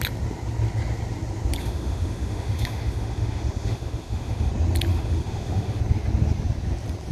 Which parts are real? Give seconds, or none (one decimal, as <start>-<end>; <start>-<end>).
0.0-1.6; 4.5-4.9; 5.8-7.1